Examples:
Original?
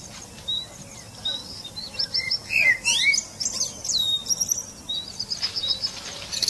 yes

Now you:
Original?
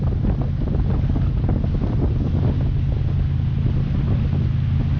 yes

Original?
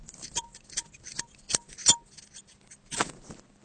yes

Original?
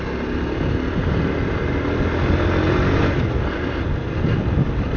yes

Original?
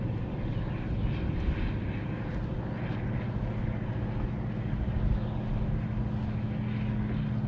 yes